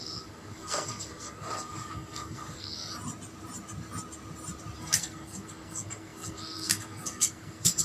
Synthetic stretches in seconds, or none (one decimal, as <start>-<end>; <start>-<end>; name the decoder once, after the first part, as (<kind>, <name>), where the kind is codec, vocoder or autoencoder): 0.0-2.9 (codec, SNAC); 4.8-7.8